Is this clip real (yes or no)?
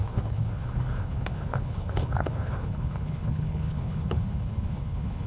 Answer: no